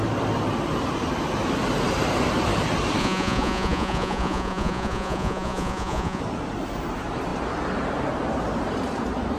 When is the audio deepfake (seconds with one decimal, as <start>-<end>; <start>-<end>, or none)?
3.0-6.2